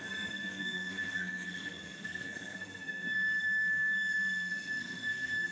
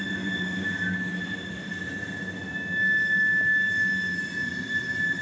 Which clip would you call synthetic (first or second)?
first